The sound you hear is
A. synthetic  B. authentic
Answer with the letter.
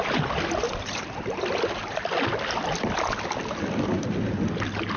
B